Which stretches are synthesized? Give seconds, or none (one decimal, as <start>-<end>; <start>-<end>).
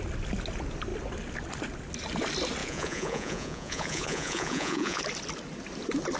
2.6-5.0